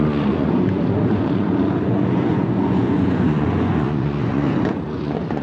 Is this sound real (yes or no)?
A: no